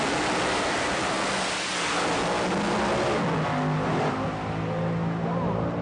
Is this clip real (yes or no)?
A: yes